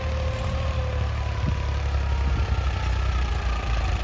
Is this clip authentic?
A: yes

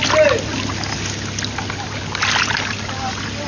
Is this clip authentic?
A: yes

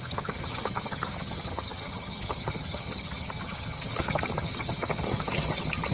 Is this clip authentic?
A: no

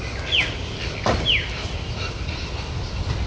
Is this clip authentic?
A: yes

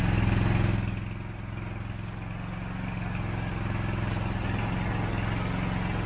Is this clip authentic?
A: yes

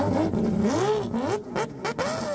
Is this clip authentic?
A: yes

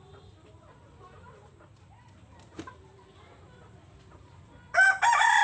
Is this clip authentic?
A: yes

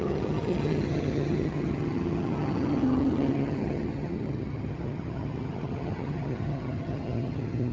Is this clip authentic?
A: no